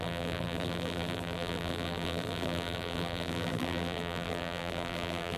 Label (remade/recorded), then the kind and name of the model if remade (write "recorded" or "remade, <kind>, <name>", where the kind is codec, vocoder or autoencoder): remade, vocoder, BigVGAN v2